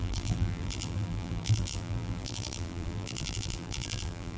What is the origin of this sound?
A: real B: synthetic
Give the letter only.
B